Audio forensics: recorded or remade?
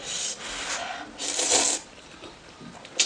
recorded